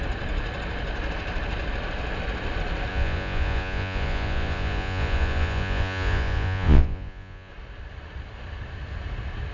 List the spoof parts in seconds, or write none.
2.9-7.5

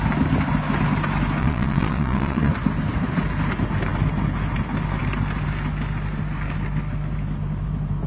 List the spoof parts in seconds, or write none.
1.4-2.5

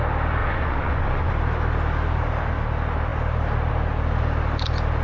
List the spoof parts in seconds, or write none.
0.4-1.3

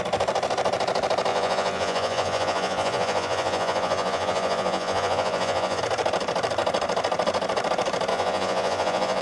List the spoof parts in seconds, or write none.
1.3-5.8; 8.1-9.2

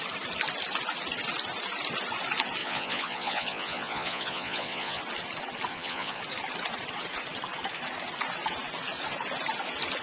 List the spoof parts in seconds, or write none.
2.6-5.0; 5.7-6.2